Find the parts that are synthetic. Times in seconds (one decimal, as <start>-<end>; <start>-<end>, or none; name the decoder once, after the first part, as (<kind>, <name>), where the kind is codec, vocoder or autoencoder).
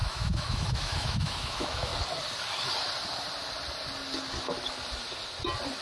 0.0-1.9 (autoencoder, DAC-VAE)